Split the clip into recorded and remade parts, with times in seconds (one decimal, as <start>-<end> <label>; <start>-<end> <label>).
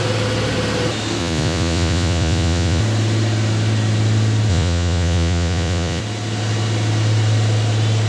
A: 0.0-1.2 recorded; 1.2-2.8 remade; 2.8-4.5 recorded; 4.5-6.0 remade; 6.0-8.1 recorded